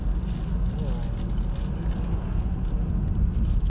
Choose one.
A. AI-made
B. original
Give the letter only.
B